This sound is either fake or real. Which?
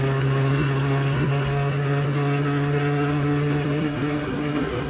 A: fake